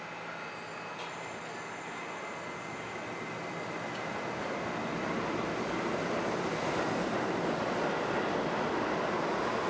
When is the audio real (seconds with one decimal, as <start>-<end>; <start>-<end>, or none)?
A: 0.0-9.7